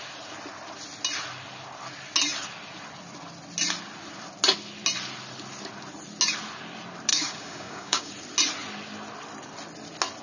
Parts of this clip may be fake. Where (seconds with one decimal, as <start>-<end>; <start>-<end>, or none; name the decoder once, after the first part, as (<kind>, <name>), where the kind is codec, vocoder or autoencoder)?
7.1-8.1 (codec, DAC)